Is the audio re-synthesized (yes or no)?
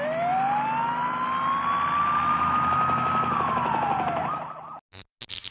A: no